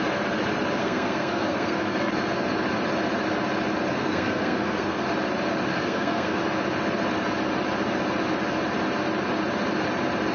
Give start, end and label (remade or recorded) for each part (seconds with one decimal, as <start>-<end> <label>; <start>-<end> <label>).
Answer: 0.0-0.8 recorded; 0.8-2.1 remade; 2.1-3.9 recorded; 3.9-5.0 remade; 5.0-5.7 recorded; 5.7-6.4 remade; 6.4-10.3 recorded